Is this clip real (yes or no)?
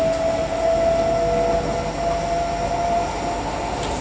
yes